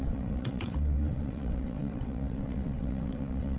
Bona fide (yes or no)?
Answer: no